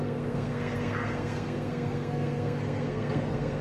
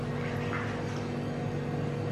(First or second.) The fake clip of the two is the first